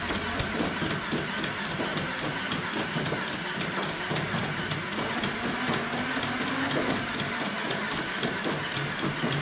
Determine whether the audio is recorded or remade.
recorded